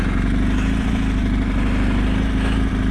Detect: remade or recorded recorded